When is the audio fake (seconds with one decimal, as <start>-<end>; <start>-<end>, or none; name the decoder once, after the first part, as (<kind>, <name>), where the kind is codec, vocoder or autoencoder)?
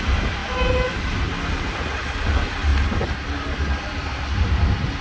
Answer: none